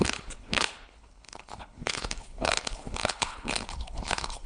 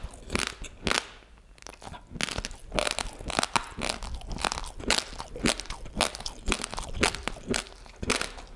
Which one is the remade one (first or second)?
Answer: first